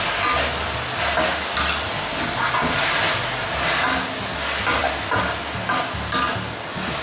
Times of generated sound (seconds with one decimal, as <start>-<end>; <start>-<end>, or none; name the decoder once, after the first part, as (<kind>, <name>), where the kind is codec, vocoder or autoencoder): none